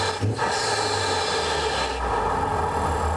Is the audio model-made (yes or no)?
no